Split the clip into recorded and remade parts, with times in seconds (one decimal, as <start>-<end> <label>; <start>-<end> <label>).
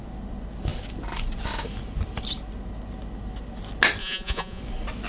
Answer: 0.0-4.0 recorded; 4.0-4.6 remade; 4.6-5.1 recorded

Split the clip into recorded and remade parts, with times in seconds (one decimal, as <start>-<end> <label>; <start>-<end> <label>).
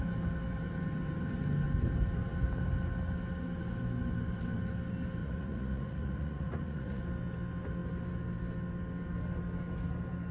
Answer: 0.0-5.2 recorded; 5.2-7.0 remade; 7.0-10.3 recorded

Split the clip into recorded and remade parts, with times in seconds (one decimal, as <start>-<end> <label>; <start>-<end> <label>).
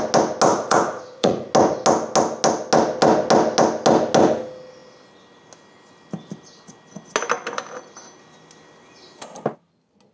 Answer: 0.0-0.5 recorded; 0.5-1.5 remade; 1.5-10.1 recorded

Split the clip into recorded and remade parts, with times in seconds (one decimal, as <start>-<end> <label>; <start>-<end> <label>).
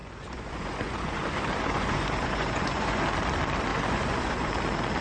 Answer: 0.0-3.0 remade; 3.0-3.7 recorded; 3.7-4.5 remade; 4.5-5.0 recorded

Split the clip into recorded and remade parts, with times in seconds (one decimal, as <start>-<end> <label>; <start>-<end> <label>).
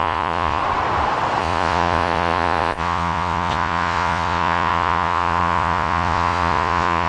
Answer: 0.0-0.6 remade; 0.6-1.4 recorded; 1.4-7.1 remade